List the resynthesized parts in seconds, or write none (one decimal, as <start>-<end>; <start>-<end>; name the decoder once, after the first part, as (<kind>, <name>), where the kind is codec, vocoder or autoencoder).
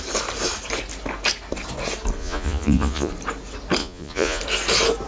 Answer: 2.2-3.1 (vocoder, Vocos); 3.8-4.4